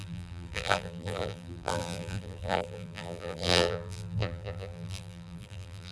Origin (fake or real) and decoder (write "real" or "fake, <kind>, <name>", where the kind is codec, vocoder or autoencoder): fake, vocoder, BigVGAN v2